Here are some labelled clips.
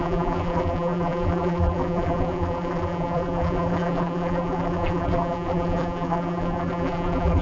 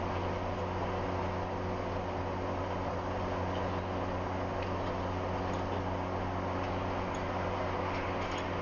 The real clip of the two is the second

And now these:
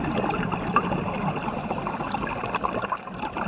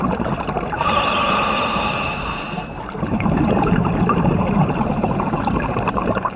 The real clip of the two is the first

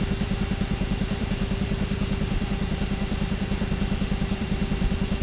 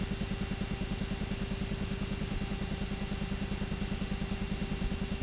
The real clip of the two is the second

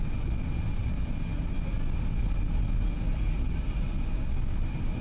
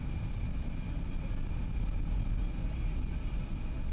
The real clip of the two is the first